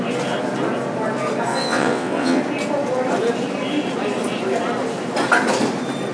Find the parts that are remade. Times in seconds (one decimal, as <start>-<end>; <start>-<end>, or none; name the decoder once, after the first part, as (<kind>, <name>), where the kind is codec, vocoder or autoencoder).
1.5-2.4 (vocoder, WaveNeXt)